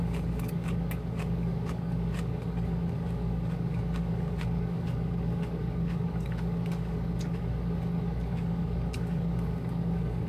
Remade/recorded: remade